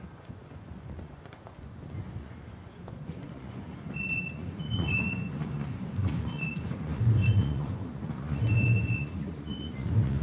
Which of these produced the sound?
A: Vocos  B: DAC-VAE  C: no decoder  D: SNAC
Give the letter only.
A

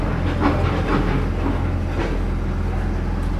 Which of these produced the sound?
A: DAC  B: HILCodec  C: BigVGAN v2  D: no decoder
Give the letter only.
D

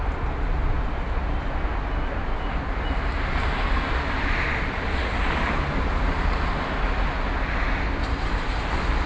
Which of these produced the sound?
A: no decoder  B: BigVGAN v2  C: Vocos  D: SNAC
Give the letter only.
A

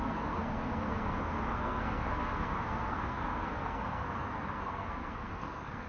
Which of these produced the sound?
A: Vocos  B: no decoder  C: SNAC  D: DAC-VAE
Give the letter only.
C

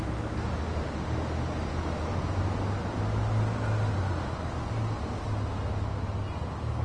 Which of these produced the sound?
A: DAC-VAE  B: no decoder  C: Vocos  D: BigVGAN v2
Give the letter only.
B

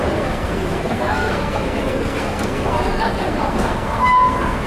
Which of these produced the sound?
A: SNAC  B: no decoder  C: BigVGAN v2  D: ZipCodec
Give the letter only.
A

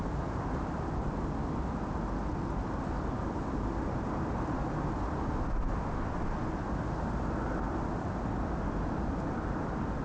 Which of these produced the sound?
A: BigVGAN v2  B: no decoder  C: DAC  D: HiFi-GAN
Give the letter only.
B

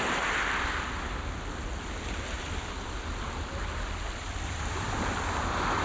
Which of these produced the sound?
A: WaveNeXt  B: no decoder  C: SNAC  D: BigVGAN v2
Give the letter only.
B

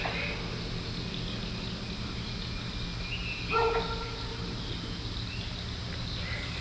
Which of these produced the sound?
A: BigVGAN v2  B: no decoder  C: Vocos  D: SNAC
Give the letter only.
B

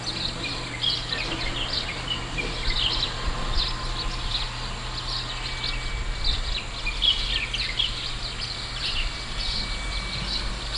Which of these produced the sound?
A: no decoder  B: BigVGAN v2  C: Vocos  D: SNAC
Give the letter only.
A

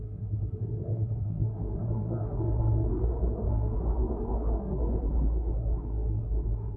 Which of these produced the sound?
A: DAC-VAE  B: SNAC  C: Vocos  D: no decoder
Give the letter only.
B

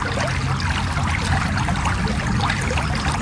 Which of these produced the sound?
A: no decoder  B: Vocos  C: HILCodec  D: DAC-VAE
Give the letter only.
A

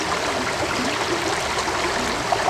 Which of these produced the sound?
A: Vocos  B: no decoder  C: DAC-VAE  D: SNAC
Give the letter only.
B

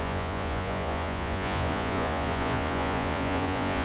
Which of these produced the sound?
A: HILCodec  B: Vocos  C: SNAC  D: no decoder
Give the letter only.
B